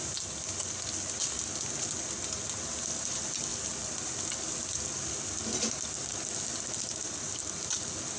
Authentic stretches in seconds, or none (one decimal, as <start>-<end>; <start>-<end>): 0.0-8.2

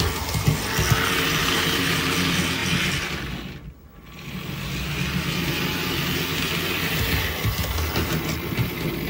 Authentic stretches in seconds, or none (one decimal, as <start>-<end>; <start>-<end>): 0.0-1.4; 2.0-9.1

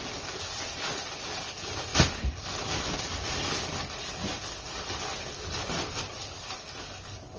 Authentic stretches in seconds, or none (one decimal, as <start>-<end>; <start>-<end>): 0.0-7.4

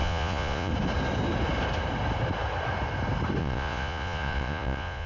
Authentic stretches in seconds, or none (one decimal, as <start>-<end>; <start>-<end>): 0.7-3.4

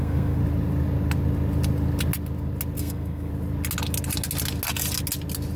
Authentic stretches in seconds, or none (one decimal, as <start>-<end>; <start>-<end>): 0.4-2.8; 3.3-5.6

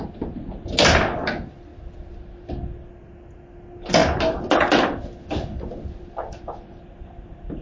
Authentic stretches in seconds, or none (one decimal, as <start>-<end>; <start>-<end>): 0.0-7.6

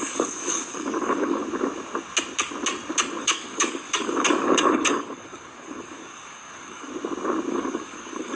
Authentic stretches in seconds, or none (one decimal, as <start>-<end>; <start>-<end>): 1.4-3.2; 6.9-7.5